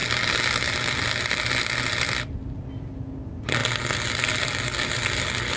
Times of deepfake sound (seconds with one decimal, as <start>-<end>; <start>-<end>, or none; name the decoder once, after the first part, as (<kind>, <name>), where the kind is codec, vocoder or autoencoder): none